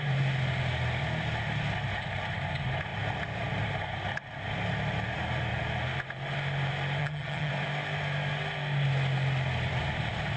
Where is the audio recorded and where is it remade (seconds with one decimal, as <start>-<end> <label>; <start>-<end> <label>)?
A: 0.0-7.0 recorded; 7.0-7.5 remade; 7.5-10.4 recorded

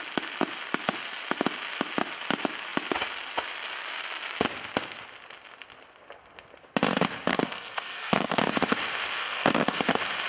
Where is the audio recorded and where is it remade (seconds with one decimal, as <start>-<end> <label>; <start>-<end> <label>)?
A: 0.0-7.3 recorded; 7.3-8.4 remade; 8.4-9.2 recorded; 9.2-9.8 remade; 9.8-10.3 recorded

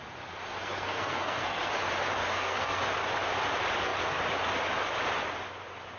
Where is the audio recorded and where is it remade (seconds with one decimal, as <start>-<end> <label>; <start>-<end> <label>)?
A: 0.0-0.6 recorded; 0.6-1.7 remade; 1.7-2.2 recorded; 2.2-2.8 remade; 2.8-6.0 recorded

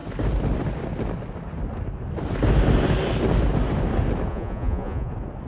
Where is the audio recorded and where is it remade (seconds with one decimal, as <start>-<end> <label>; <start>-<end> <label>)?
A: 0.0-4.3 recorded; 4.3-5.1 remade; 5.1-5.5 recorded

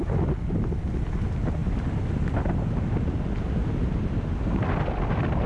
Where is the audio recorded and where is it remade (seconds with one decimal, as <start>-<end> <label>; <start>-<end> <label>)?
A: 0.0-5.5 recorded

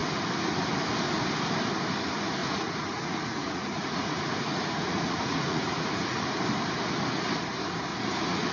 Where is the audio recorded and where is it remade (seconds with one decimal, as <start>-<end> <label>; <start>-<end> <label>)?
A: 0.0-2.4 recorded; 2.4-6.4 remade; 6.4-7.9 recorded; 7.9-8.5 remade